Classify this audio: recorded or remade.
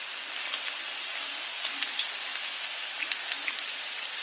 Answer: recorded